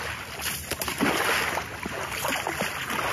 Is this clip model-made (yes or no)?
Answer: no